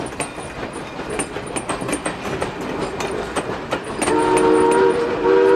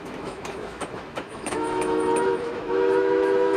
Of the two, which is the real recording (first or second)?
first